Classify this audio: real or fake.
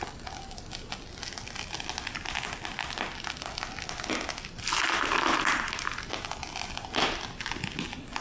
real